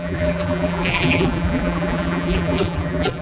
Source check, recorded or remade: remade